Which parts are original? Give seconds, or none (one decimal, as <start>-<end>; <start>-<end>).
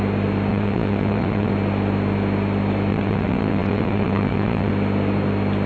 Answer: 0.0-0.5; 1.5-2.9; 4.7-5.7